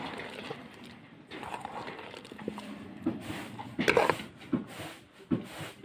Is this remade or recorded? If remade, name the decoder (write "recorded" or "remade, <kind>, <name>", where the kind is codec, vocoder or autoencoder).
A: recorded